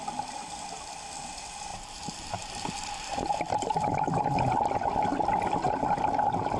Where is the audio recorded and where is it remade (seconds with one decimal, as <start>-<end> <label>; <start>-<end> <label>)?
0.0-1.7 recorded; 1.7-4.4 remade; 4.4-6.6 recorded